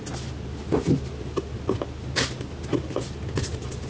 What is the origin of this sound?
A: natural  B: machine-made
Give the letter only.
A